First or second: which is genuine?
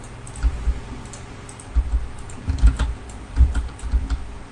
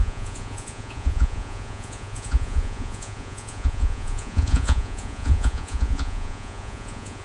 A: first